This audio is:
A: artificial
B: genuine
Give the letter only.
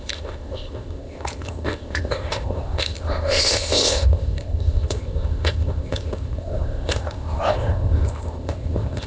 A